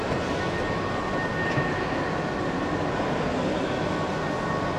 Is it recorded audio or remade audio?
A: recorded